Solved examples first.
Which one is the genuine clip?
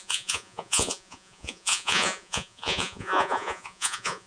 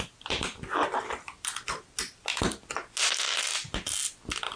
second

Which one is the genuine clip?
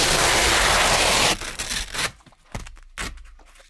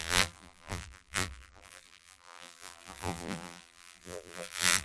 first